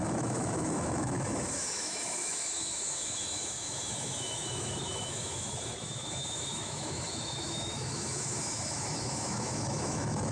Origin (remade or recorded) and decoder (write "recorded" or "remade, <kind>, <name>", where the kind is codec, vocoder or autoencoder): remade, autoencoder, DAC-VAE